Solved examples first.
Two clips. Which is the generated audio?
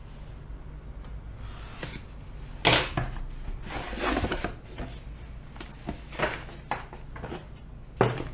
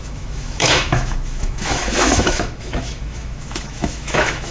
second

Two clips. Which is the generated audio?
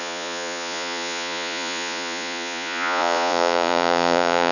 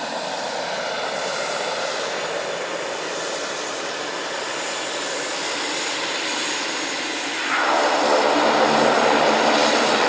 first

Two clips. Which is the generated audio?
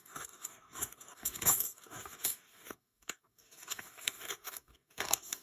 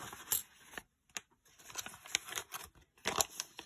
first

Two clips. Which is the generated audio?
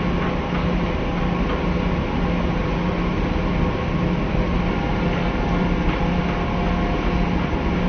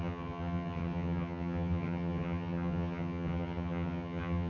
second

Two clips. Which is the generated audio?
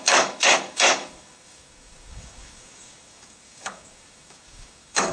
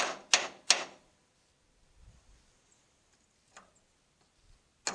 first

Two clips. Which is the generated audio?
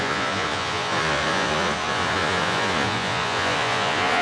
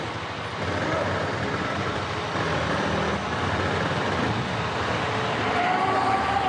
first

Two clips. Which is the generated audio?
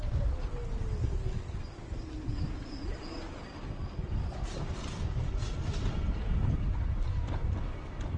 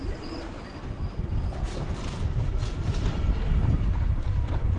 second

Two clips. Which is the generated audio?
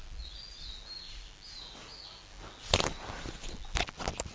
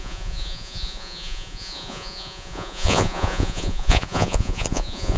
second